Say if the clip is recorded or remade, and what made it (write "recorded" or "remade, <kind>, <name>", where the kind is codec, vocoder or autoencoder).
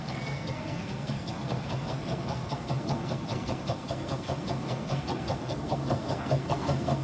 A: remade, codec, SNAC